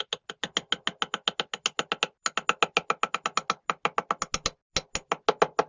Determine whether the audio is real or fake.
real